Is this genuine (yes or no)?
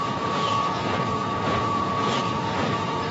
no